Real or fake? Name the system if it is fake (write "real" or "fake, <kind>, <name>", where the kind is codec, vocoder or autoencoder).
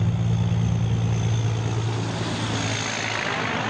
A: real